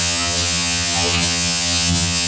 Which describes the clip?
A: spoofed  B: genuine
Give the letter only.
A